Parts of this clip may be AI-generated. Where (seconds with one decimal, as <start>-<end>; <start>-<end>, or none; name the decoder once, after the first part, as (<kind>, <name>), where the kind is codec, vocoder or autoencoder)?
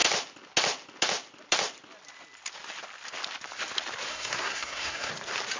4.1-5.1 (codec, SNAC)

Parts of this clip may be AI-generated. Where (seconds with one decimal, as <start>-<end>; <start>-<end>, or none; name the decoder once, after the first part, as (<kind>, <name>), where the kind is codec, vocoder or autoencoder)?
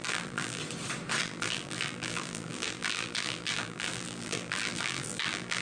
0.0-0.6 (vocoder, BigVGAN v2); 1.2-5.6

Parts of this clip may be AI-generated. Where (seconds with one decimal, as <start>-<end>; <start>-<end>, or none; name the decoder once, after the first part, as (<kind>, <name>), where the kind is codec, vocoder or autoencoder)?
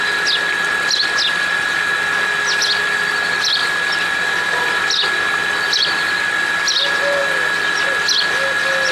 3.6-4.8 (vocoder, BigVGAN v2)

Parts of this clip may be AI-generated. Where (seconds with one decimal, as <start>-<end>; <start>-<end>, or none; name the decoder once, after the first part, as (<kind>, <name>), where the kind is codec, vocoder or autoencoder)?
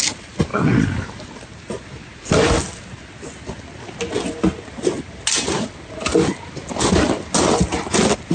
none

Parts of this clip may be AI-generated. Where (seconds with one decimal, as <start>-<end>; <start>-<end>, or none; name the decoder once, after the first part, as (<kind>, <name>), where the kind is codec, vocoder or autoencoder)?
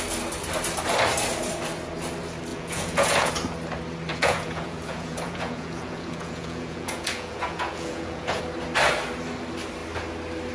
2.5-3.3 (vocoder, Vocos); 4.1-8.4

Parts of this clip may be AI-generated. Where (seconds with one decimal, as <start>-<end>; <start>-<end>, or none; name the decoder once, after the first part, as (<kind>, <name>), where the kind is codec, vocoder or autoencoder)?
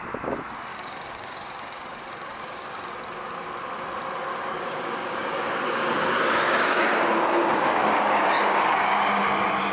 0.7-2.9 (codec, DAC); 4.3-9.2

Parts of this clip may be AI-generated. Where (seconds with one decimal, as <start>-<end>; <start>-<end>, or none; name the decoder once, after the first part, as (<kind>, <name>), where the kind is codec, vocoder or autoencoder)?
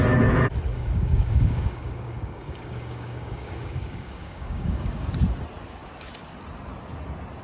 0.7-5.1 (codec, DAC)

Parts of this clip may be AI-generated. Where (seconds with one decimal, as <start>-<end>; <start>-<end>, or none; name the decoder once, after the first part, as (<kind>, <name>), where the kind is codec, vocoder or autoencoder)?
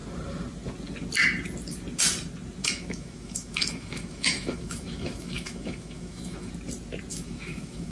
2.6-6.5 (autoencoder, DAC-VAE); 7.1-7.9